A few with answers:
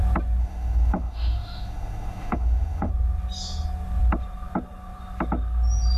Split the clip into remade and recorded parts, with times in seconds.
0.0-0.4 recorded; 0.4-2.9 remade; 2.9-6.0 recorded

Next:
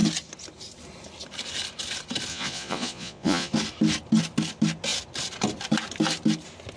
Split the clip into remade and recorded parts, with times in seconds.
0.0-2.3 recorded; 2.3-3.5 remade; 3.5-6.8 recorded

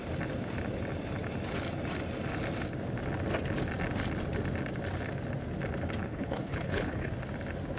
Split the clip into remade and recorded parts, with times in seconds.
0.0-6.0 recorded; 6.0-7.1 remade; 7.1-7.8 recorded

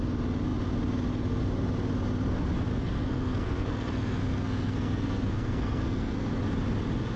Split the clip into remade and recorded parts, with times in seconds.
0.0-2.7 recorded; 2.7-6.4 remade; 6.4-7.2 recorded

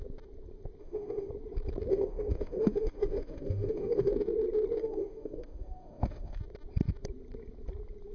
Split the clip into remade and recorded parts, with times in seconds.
0.0-0.8 recorded; 0.8-1.3 remade; 1.3-1.9 recorded; 1.9-4.1 remade; 4.1-4.8 recorded; 4.8-6.4 remade; 6.4-8.1 recorded

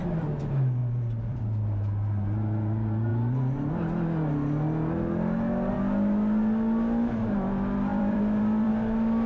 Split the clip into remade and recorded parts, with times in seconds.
0.0-0.8 recorded; 0.8-1.4 remade; 1.4-7.9 recorded; 7.9-8.7 remade; 8.7-9.3 recorded

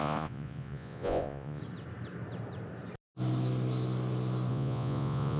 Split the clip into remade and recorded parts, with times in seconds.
0.0-1.6 remade; 1.6-4.5 recorded; 4.5-5.4 remade